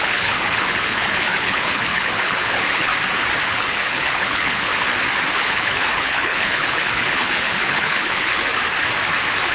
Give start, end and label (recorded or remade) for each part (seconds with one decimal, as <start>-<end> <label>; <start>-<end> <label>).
0.0-2.9 remade; 2.9-3.5 recorded; 3.5-4.7 remade; 4.7-5.3 recorded; 5.3-8.5 remade; 8.5-9.5 recorded